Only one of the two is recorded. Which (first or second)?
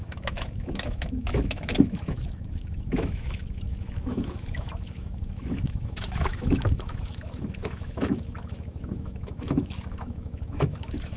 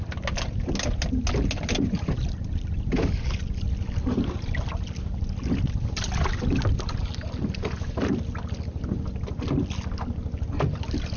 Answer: second